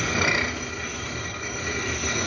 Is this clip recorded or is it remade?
recorded